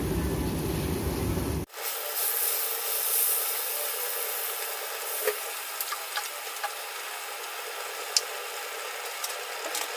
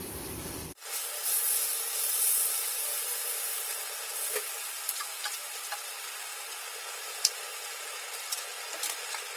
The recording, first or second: first